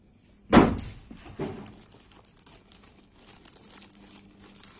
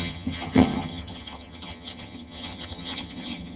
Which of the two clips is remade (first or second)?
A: second